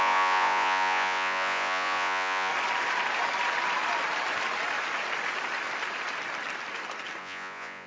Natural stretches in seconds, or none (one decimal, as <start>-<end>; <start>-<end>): 2.5-7.2